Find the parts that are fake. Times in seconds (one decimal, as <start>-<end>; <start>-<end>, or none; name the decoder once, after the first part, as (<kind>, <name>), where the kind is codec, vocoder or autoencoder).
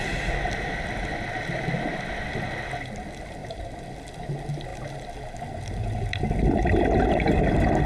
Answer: 3.4-3.9 (vocoder, BigVGAN v2)